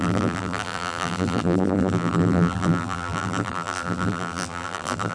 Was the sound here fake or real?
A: fake